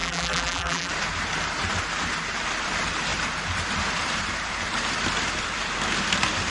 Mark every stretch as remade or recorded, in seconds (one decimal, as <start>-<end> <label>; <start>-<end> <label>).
0.0-0.9 remade; 0.9-6.5 recorded